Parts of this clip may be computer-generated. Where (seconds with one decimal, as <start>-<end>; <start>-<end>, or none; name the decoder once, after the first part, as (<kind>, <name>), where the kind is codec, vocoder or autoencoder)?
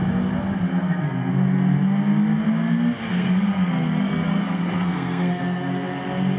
0.7-1.3 (codec, SNAC); 3.1-5.4